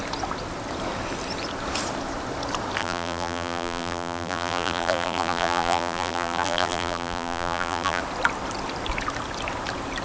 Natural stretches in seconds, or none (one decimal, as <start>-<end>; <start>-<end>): 0.0-2.8; 8.0-10.0